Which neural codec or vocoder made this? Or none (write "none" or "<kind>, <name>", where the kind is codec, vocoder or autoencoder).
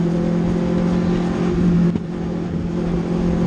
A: none